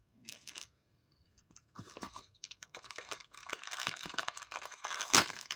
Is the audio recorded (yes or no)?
no